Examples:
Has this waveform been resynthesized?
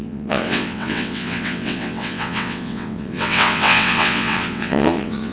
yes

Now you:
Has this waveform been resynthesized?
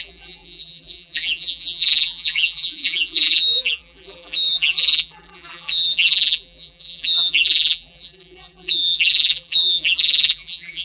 yes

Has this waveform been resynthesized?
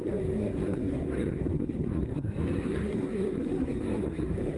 yes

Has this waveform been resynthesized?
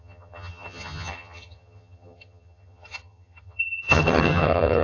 yes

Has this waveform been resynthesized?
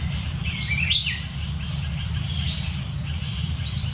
no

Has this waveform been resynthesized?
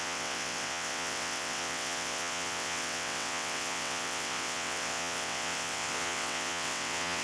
yes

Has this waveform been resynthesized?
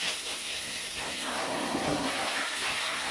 yes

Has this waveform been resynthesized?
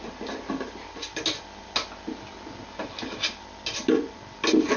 no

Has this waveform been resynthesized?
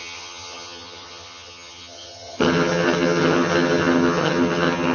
yes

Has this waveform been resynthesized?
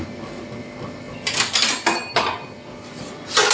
no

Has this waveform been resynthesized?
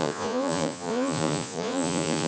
yes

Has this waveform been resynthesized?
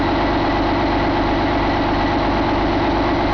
no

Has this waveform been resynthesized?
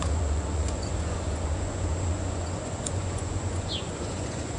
yes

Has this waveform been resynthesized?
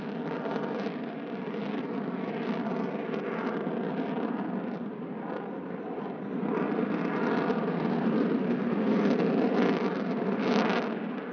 yes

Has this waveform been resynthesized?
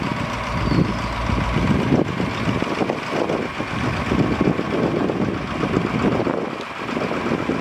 no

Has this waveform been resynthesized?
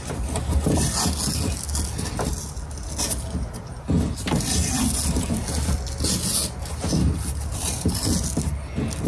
no